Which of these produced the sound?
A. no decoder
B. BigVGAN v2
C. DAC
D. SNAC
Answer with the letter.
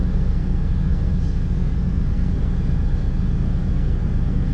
D